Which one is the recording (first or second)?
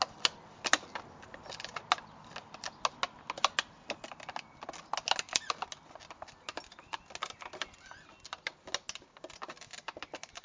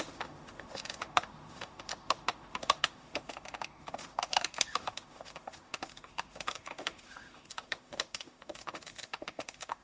first